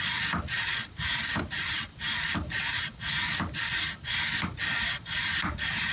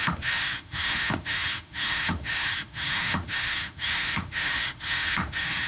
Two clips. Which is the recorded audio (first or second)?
first